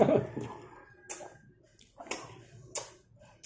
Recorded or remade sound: recorded